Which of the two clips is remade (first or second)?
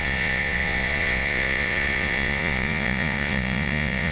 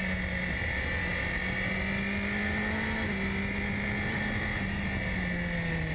first